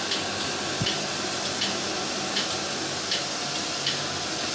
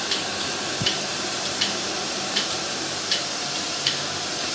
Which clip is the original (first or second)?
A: first